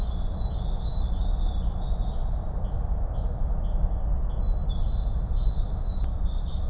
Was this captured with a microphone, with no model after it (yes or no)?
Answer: yes